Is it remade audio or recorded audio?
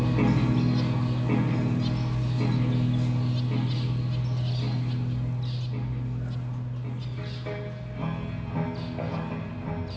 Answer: recorded